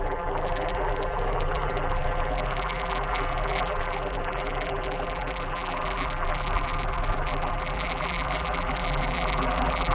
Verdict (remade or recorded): remade